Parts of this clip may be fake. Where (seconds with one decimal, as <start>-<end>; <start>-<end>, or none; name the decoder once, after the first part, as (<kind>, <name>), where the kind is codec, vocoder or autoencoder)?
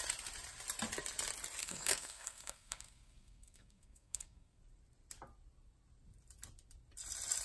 1.6-4.6 (codec, SNAC)